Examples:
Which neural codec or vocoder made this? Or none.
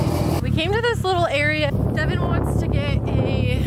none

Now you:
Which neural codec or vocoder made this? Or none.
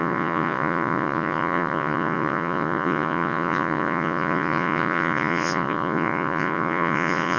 vocoder, Vocos